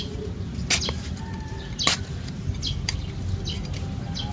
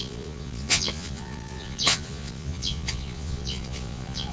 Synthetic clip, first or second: second